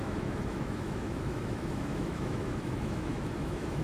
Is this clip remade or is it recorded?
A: remade